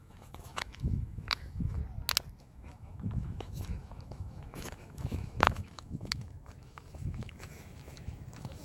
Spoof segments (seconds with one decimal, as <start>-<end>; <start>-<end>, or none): 0.0-1.8; 2.4-8.6